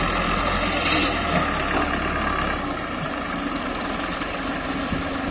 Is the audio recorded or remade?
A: recorded